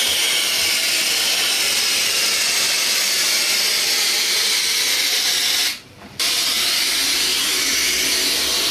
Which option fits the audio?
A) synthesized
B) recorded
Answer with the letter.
B